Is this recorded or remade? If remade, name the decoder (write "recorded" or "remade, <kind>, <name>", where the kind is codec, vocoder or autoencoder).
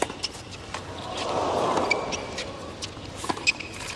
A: recorded